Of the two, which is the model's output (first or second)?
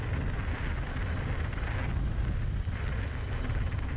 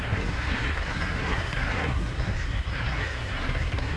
second